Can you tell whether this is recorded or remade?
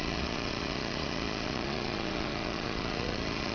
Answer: remade